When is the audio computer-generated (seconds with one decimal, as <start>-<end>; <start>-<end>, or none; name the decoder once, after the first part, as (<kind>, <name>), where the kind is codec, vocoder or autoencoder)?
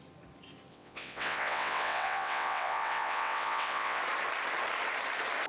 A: 0.7-4.0 (vocoder, WaveNeXt)